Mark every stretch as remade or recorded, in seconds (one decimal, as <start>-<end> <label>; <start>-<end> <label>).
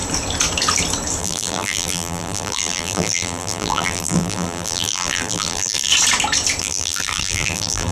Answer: 0.0-1.2 recorded; 1.2-5.9 remade; 5.9-6.6 recorded; 6.6-7.9 remade